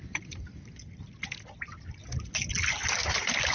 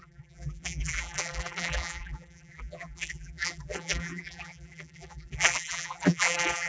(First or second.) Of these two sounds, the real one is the first